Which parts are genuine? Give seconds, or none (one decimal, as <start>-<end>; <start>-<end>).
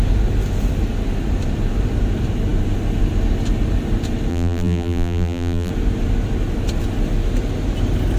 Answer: 0.0-4.3; 5.7-8.2